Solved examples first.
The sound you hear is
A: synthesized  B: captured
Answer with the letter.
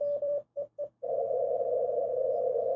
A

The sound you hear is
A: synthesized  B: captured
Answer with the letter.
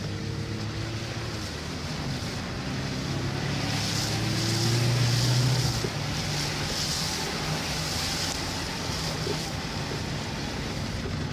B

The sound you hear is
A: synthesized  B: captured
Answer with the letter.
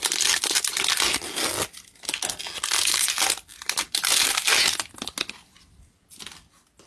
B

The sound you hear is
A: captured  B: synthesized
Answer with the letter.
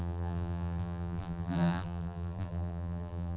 B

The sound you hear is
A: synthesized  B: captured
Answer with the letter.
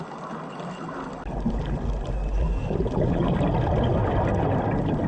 B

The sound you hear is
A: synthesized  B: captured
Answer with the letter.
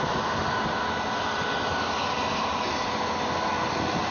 B